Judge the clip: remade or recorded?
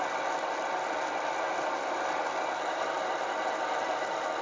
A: recorded